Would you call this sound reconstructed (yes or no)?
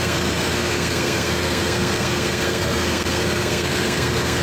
yes